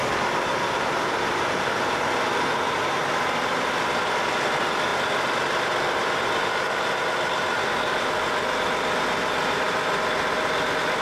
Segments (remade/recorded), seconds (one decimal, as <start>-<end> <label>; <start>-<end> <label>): 0.0-11.0 recorded